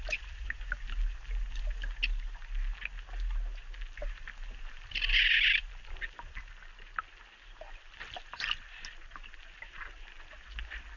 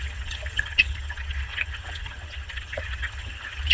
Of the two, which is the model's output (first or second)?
second